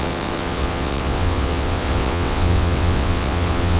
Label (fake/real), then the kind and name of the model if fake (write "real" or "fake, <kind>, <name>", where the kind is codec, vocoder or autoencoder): fake, vocoder, WaveNeXt